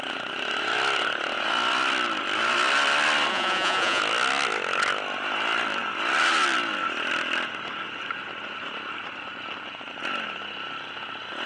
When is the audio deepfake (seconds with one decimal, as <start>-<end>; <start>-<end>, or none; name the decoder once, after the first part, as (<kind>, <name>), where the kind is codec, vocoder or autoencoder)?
3.3-4.0 (vocoder, Vocos)